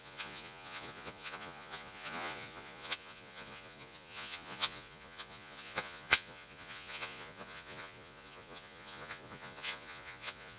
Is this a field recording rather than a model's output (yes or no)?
no